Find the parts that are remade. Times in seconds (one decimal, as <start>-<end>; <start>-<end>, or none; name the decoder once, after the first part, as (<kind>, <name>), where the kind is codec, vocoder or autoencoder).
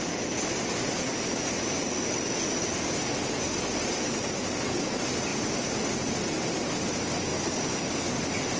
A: none